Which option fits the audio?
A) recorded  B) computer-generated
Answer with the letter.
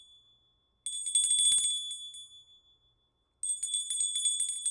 A